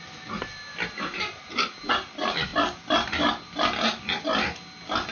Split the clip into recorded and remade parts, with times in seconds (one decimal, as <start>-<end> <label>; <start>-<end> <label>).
0.0-5.1 recorded

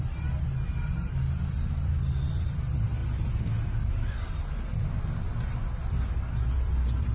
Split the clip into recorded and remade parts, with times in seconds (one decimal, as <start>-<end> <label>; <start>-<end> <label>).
0.0-3.0 remade; 3.0-6.1 recorded; 6.1-7.1 remade

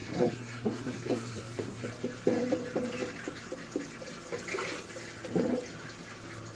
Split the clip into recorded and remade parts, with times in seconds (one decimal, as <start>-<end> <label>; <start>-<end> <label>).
0.0-1.9 remade; 1.9-6.6 recorded